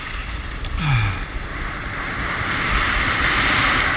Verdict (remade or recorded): recorded